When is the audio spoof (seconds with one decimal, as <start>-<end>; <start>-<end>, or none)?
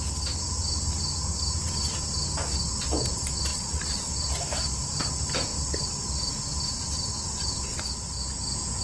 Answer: 3.5-4.1